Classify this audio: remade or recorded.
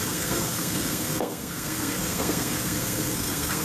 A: remade